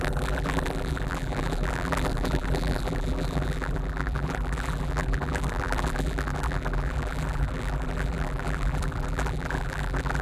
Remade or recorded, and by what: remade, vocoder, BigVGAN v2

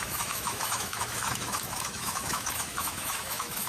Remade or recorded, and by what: remade, autoencoder, DAC-VAE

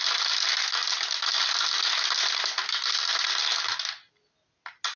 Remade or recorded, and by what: recorded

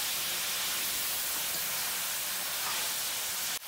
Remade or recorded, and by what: recorded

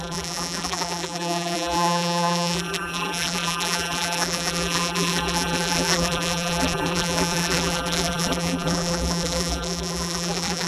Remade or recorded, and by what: remade, vocoder, BigVGAN v2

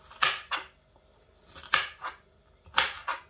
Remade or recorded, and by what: recorded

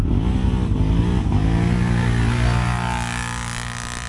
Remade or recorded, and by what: recorded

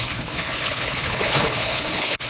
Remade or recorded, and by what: remade, codec, HILCodec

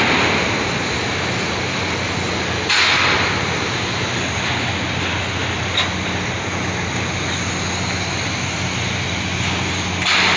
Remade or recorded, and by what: recorded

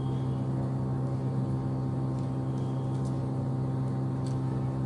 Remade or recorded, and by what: recorded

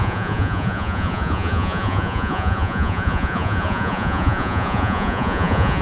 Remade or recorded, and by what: remade, vocoder, Vocos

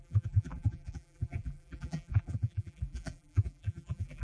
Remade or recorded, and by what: remade, vocoder, BigVGAN v2